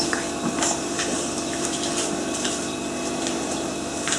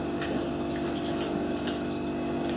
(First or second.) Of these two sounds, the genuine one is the second